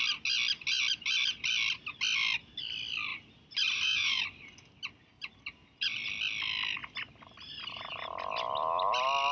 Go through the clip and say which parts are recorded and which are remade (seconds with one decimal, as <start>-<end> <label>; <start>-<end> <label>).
0.0-3.1 recorded; 3.1-4.2 remade; 4.2-9.3 recorded